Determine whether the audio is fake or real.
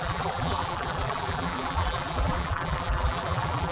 fake